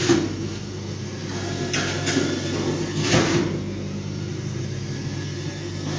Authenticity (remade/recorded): recorded